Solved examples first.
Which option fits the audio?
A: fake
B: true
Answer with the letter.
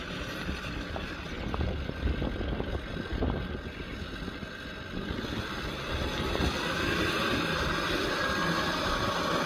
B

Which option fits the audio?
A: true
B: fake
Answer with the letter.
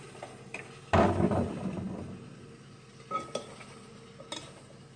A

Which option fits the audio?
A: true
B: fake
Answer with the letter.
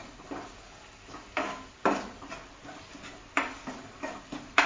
A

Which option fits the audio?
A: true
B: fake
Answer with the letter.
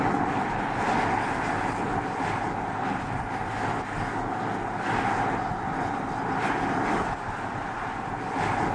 A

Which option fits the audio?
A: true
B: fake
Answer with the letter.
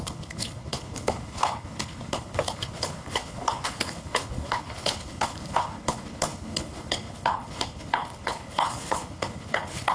B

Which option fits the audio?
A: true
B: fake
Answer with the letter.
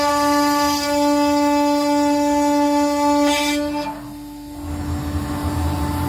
A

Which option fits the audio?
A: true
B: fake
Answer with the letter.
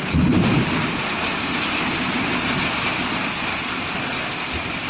A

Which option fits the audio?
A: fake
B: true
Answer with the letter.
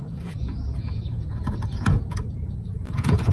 A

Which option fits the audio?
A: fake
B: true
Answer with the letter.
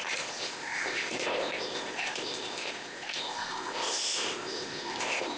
A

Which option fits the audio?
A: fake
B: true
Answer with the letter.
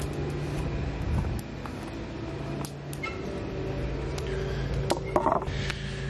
B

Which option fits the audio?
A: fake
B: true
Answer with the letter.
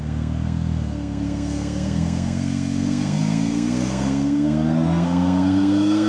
A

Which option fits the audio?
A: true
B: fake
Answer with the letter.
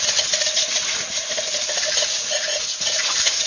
A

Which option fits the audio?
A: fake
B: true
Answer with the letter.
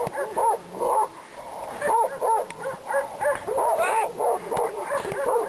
A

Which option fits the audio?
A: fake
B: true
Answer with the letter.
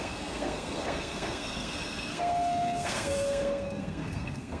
A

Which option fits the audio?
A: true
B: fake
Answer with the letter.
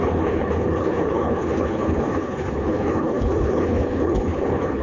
B